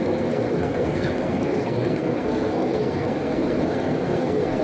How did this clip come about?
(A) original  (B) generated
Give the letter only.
B